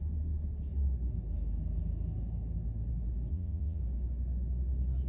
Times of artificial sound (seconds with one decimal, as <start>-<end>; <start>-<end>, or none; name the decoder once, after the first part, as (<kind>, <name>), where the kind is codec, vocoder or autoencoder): 3.3-3.8 (vocoder, Vocos)

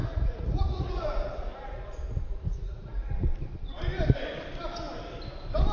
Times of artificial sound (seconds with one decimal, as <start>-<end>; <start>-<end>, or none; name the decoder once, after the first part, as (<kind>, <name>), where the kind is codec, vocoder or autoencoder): 0.0-3.4 (vocoder, Vocos)

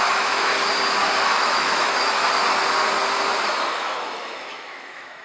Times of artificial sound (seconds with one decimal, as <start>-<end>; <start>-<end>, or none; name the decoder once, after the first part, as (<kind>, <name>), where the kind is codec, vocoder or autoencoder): 0.0-0.5 (autoencoder, DAC-VAE); 1.4-2.2; 3.7-5.2

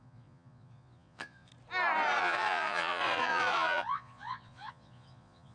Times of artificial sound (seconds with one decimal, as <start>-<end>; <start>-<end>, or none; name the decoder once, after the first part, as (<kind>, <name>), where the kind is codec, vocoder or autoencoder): 0.0-1.5 (vocoder, Vocos); 2.2-5.5

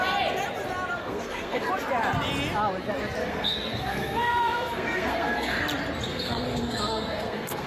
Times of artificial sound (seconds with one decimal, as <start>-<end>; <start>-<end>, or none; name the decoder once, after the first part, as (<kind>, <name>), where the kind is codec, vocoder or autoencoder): 1.0-1.7 (codec, SNAC); 3.2-5.6; 6.1-7.7

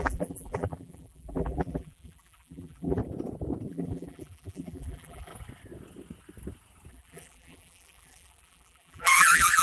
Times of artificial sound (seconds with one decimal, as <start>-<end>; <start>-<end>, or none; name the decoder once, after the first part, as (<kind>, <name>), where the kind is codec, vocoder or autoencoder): 0.0-3.0 (vocoder, BigVGAN v2); 3.7-5.3; 6.9-9.6

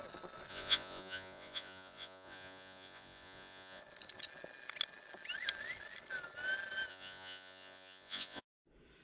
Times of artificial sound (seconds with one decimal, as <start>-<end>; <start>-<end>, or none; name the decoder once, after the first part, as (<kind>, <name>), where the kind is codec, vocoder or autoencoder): 0.5-3.8 (vocoder, Vocos); 6.9-8.4

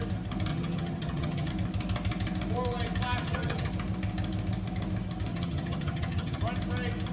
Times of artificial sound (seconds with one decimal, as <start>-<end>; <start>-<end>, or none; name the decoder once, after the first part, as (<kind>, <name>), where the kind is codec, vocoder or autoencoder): 0.5-1.5 (vocoder, HiFi-GAN); 3.2-3.7; 5.3-6.4